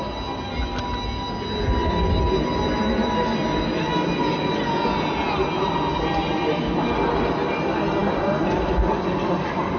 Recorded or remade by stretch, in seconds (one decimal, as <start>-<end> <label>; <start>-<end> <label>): 0.0-9.8 recorded